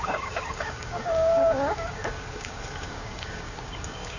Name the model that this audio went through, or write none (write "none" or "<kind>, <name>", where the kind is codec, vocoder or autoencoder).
codec, DAC